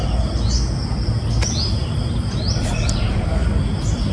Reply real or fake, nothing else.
real